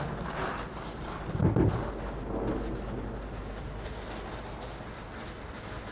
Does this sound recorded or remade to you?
recorded